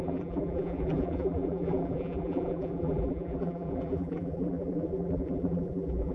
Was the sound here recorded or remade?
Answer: remade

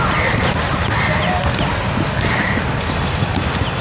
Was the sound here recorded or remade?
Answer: recorded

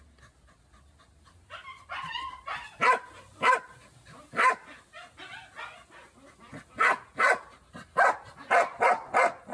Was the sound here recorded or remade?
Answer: recorded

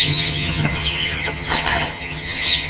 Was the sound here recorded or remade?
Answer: remade